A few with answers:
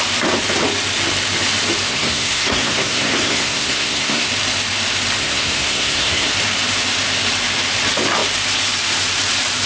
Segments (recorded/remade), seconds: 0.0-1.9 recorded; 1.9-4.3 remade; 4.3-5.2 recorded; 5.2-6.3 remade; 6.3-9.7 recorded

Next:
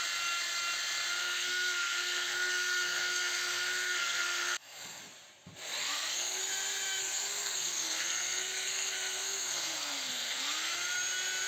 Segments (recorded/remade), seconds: 0.0-1.2 recorded; 1.2-5.0 remade; 5.0-5.8 recorded; 5.8-6.4 remade; 6.4-7.0 recorded; 7.0-10.7 remade; 10.7-11.5 recorded

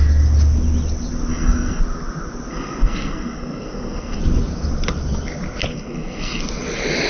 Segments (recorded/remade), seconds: 0.0-1.3 recorded; 1.3-1.8 remade; 1.8-2.5 recorded; 2.5-4.2 remade; 4.2-5.7 recorded; 5.7-6.4 remade; 6.4-7.1 recorded